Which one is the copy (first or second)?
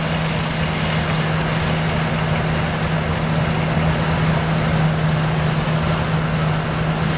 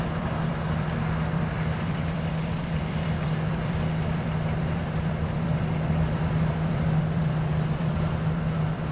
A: second